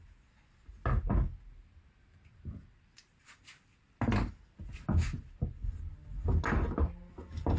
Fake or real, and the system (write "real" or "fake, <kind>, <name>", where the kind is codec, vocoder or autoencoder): real